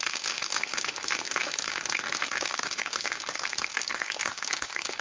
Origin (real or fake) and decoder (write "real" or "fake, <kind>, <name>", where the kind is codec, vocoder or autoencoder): fake, autoencoder, DAC-VAE